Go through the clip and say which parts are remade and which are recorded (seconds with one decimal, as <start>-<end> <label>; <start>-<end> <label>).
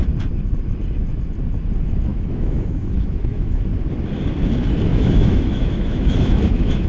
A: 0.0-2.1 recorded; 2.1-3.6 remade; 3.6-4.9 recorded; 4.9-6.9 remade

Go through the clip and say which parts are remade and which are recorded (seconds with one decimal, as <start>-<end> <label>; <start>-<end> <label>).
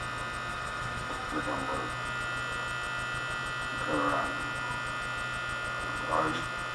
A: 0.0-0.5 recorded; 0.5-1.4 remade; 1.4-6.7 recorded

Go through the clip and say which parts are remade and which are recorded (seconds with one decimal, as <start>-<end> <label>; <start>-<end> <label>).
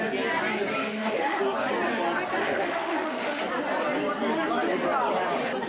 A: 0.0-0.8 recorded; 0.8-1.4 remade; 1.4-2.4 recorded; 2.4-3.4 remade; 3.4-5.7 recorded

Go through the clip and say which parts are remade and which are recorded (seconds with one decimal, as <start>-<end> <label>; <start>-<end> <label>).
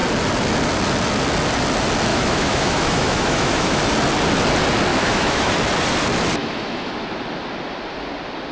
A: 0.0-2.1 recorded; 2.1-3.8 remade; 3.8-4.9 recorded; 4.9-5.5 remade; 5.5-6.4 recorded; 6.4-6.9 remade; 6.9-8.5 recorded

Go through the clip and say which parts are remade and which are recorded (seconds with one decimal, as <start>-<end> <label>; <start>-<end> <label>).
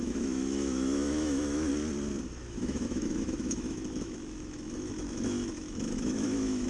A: 0.0-1.7 remade; 1.7-2.5 recorded; 2.5-6.7 remade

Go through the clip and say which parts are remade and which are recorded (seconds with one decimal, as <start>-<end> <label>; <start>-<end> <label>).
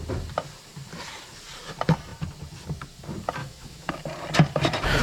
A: 0.0-3.4 recorded; 3.4-3.9 remade; 3.9-5.0 recorded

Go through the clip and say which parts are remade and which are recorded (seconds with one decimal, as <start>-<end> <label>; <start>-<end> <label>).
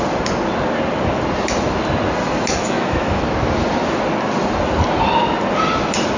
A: 0.0-2.5 recorded; 2.5-3.2 remade; 3.2-6.2 recorded